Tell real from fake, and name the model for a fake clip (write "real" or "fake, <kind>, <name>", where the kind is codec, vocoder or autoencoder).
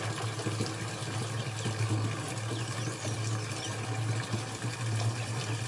real